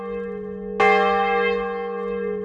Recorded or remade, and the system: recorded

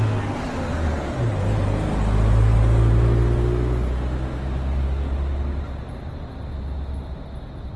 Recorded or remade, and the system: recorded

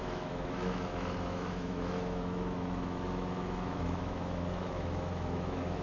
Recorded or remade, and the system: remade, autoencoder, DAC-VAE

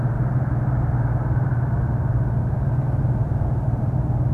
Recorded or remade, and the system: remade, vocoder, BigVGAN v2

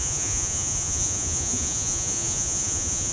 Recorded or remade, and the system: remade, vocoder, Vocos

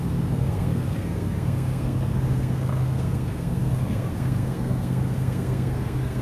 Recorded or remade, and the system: remade, codec, SNAC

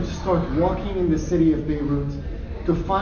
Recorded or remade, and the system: recorded